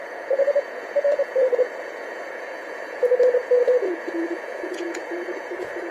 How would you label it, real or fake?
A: fake